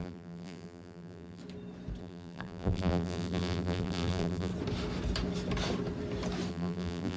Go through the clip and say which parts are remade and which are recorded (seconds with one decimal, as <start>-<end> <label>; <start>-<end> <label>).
0.0-1.4 remade; 1.4-2.0 recorded; 2.0-4.5 remade; 4.5-6.5 recorded; 6.5-7.2 remade